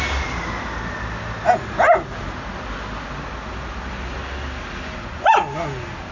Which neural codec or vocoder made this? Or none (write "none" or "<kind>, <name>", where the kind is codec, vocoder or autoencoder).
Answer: none